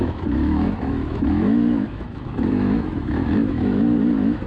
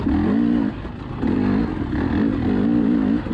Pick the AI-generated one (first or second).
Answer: first